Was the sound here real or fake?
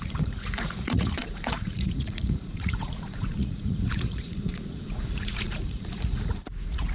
fake